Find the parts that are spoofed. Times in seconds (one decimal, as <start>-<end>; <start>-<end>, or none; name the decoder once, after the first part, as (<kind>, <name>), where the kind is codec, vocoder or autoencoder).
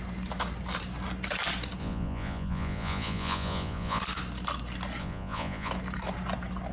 1.8-4.0 (vocoder, Vocos); 5.0-5.7